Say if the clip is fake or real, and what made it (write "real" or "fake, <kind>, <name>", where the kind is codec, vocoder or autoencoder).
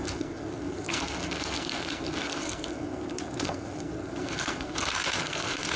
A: fake, codec, SNAC